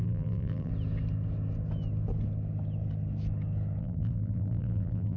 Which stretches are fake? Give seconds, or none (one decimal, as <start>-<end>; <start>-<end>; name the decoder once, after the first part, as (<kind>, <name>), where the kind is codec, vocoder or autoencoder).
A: 0.0-0.7 (vocoder, BigVGAN v2); 3.8-5.2